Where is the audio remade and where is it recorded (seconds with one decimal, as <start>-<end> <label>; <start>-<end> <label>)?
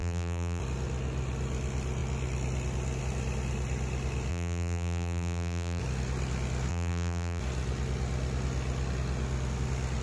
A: 0.0-0.6 remade; 0.6-4.3 recorded; 4.3-5.8 remade; 5.8-6.7 recorded; 6.7-7.4 remade; 7.4-10.0 recorded